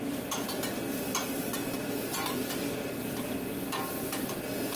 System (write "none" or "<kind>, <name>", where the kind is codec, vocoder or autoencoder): none